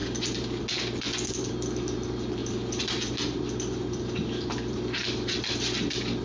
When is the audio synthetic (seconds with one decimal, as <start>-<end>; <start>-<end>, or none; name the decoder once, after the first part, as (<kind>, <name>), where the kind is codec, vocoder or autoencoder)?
2.4-5.8 (vocoder, BigVGAN v2)